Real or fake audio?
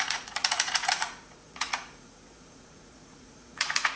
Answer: fake